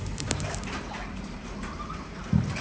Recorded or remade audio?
remade